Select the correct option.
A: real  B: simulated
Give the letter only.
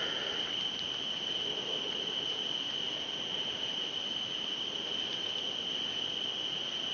A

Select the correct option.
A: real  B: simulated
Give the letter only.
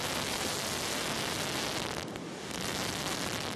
A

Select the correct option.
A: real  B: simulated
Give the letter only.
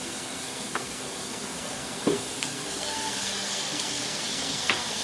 B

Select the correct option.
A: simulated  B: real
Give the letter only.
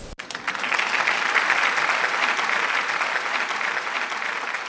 B